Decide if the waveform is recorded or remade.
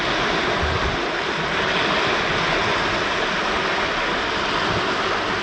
recorded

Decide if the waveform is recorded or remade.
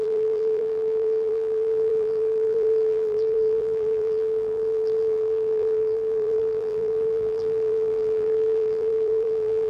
remade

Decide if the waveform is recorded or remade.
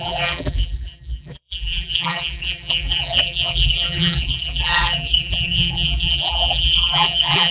remade